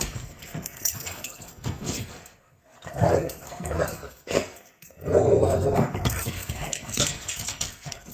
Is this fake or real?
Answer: fake